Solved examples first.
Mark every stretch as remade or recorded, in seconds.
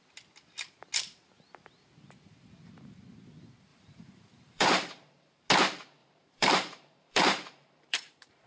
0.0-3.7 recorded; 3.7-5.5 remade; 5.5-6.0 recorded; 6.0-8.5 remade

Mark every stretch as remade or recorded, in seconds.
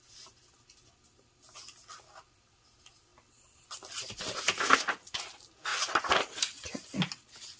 0.0-3.1 recorded; 3.1-4.4 remade; 4.4-5.7 recorded; 5.7-7.6 remade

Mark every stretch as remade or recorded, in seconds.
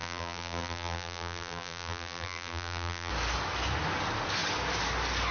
0.0-3.1 remade; 3.1-5.3 recorded